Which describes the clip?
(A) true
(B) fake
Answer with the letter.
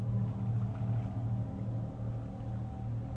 A